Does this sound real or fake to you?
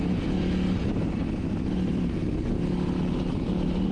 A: real